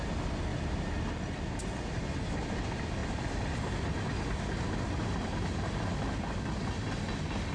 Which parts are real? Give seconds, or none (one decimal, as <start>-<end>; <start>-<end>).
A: 0.0-7.5